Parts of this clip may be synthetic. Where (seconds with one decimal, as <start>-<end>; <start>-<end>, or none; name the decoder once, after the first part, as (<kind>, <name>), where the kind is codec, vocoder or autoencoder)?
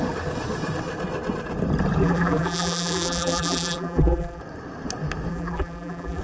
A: 2.0-4.4 (vocoder, BigVGAN v2); 5.3-6.2